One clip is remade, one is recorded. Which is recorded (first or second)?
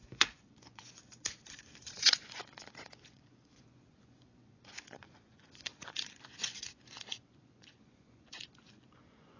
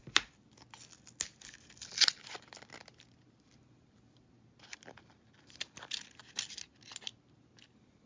second